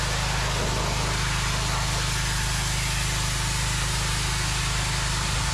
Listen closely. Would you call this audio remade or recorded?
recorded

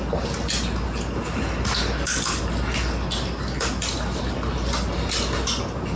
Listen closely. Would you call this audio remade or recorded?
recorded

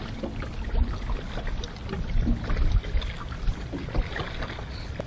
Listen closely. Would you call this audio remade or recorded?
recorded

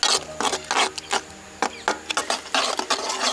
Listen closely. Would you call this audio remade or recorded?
recorded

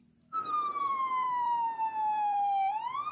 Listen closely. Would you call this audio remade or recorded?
remade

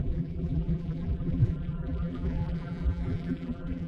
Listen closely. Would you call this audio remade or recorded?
remade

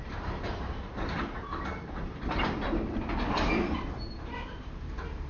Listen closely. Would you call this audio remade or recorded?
remade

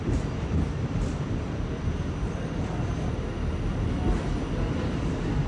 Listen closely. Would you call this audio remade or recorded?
recorded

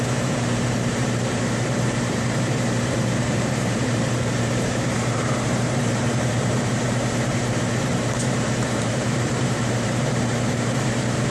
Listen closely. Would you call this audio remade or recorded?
remade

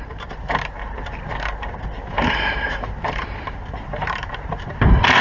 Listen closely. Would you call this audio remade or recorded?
remade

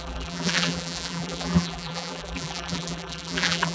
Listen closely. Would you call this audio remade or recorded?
remade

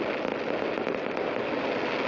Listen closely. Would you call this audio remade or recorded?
recorded